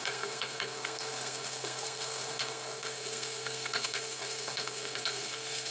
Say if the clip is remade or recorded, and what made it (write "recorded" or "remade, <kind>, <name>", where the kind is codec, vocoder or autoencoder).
remade, codec, SNAC